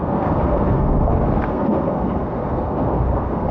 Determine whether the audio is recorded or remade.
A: remade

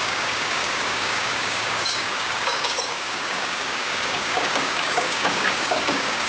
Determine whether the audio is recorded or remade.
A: remade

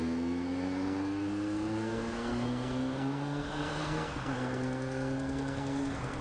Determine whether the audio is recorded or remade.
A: remade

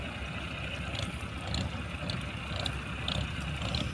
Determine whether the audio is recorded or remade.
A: recorded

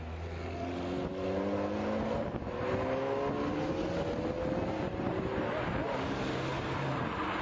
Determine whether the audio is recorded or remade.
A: recorded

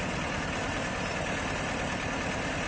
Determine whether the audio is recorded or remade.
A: recorded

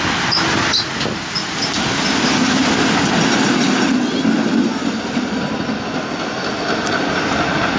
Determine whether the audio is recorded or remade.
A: recorded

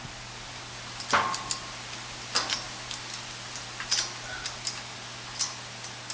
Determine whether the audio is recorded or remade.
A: recorded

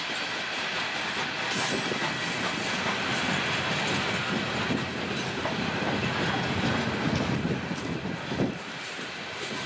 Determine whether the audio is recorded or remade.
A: recorded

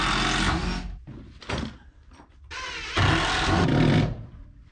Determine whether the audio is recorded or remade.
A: recorded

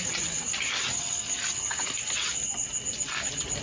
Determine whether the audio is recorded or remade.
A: recorded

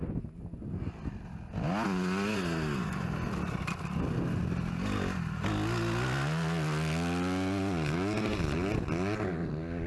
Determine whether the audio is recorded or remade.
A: recorded